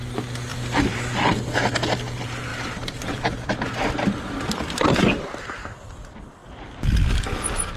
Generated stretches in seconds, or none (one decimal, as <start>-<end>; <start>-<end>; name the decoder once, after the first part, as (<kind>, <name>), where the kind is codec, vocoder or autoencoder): 0.5-1.3 (vocoder, BigVGAN v2); 2.5-5.4